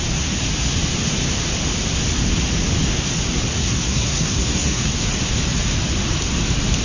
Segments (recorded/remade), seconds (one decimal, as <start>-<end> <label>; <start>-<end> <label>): 0.0-3.6 recorded; 3.6-5.0 remade; 5.0-6.8 recorded